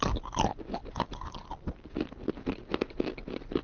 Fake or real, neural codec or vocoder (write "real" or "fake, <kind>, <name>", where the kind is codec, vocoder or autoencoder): real